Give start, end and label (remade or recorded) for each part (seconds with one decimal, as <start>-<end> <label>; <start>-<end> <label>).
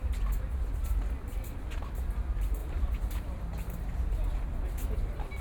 0.0-2.6 recorded; 2.6-4.7 remade; 4.7-5.4 recorded